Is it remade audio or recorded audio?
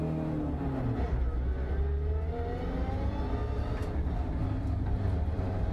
recorded